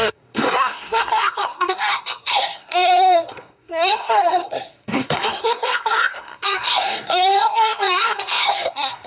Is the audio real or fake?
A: fake